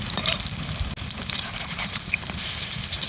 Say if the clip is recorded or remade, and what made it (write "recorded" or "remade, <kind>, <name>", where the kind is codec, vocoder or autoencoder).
recorded